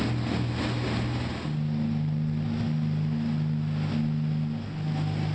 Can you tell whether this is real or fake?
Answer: real